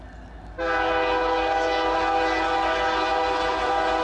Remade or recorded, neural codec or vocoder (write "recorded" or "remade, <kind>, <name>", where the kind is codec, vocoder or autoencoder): recorded